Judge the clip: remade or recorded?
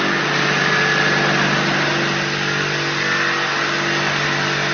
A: recorded